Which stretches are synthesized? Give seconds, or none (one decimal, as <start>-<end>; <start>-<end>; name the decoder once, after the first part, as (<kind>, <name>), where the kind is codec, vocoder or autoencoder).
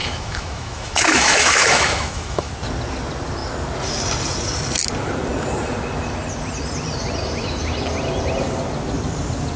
0.0-2.5 (autoencoder, DAC-VAE)